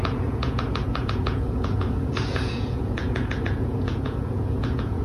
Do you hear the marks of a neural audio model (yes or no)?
yes